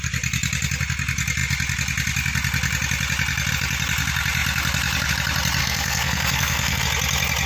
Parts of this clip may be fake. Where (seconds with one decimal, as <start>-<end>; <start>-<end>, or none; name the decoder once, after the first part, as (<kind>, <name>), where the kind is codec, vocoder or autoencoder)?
5.6-6.8 (codec, SNAC)

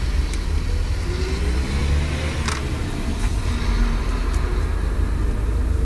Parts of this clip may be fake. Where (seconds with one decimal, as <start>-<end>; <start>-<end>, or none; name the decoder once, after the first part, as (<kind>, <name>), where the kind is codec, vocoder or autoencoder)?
none

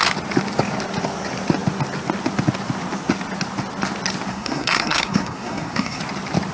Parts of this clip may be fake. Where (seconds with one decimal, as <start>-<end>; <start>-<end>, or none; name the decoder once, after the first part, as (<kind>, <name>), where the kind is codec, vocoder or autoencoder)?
4.3-6.0 (codec, SNAC)

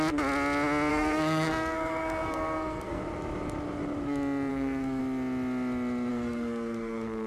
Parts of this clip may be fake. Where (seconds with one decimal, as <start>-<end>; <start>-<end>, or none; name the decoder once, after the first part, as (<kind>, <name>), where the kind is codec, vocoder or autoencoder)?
0.9-3.0 (codec, SNAC); 4.5-5.0; 6.1-7.3

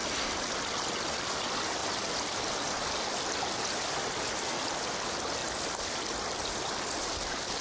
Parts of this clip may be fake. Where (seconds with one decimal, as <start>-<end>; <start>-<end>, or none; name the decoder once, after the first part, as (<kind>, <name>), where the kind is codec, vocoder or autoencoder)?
none

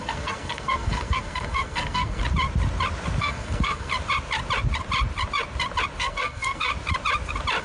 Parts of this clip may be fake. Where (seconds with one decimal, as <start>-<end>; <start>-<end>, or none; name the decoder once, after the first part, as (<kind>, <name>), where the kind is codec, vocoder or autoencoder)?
0.0-2.2 (codec, SNAC); 3.2-3.9; 6.0-6.7

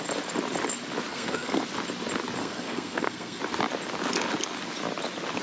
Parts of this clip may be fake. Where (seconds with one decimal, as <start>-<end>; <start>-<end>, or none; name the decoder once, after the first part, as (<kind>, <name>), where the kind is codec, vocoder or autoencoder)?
1.1-1.6 (codec, SNAC); 2.4-3.4